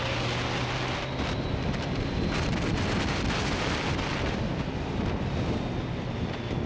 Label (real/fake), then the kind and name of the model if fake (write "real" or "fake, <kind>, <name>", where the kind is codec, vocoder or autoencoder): real